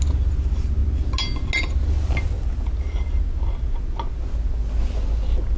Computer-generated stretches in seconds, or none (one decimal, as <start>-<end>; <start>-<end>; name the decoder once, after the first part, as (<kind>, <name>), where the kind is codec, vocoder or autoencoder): none